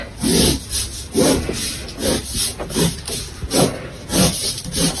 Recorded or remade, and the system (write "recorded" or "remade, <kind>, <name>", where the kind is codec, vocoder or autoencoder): recorded